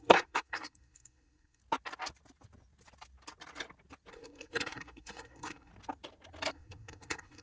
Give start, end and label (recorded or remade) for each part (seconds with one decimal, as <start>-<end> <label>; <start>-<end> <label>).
0.0-1.6 remade; 1.6-4.1 recorded; 4.1-5.7 remade; 5.7-6.5 recorded; 6.5-7.4 remade